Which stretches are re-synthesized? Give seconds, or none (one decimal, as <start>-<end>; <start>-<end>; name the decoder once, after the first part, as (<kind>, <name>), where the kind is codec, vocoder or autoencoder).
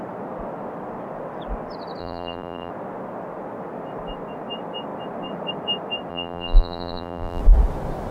2.0-2.7 (vocoder, BigVGAN v2); 6.1-7.4